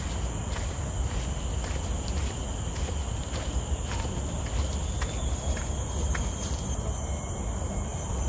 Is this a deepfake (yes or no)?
no